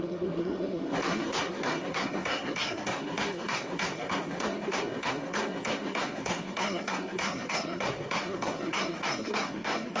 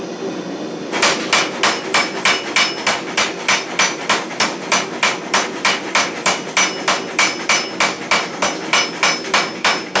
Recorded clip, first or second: second